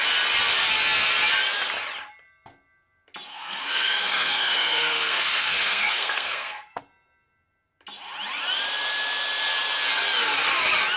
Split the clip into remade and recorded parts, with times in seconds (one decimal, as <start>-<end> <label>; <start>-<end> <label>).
0.0-3.3 recorded; 3.3-6.8 remade; 6.8-11.0 recorded